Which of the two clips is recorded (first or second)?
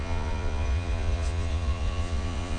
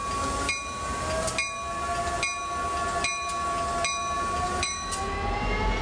second